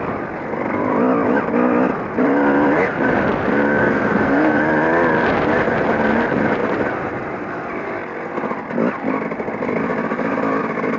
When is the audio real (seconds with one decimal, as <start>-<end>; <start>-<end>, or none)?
0.0-3.8; 4.6-11.0

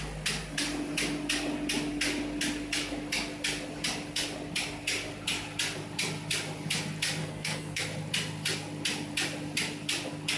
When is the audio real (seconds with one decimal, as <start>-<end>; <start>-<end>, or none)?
0.0-7.2; 7.8-10.4

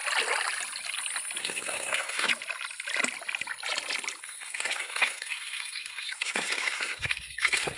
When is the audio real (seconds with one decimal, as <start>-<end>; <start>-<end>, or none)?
0.0-1.4; 2.3-4.2

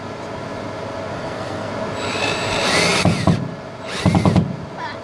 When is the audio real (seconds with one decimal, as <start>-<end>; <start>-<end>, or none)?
0.0-1.1; 1.7-5.0